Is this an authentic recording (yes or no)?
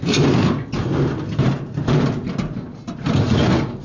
yes